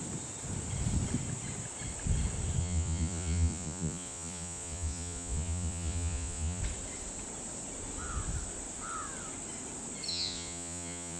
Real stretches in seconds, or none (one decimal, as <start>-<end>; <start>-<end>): 0.0-2.6; 6.6-10.1